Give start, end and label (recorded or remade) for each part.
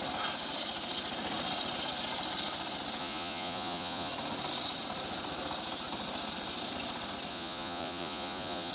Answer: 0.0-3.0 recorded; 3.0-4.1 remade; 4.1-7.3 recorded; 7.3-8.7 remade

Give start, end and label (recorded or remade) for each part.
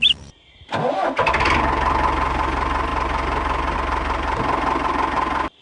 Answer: 0.0-5.6 recorded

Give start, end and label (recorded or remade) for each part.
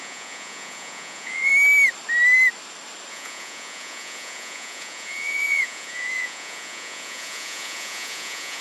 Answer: 0.0-1.5 remade; 1.5-3.1 recorded; 3.1-8.6 remade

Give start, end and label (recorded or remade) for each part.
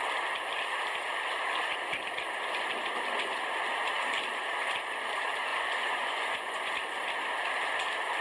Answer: 0.0-5.5 recorded; 5.5-6.7 remade; 6.7-8.2 recorded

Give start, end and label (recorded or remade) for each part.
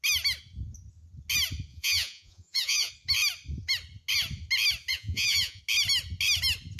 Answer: 0.0-1.7 recorded; 1.7-2.9 remade; 2.9-4.9 recorded; 4.9-5.6 remade; 5.6-6.8 recorded